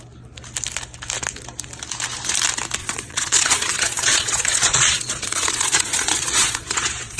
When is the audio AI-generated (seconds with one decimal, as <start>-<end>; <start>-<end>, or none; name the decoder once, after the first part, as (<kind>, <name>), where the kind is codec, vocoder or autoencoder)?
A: 2.8-7.2 (vocoder, Vocos)